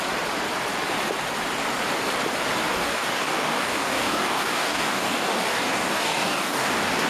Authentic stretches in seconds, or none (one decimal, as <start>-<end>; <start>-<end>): 0.0-2.7